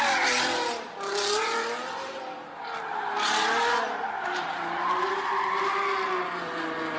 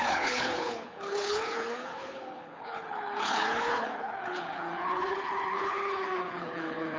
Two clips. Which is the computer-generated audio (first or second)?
second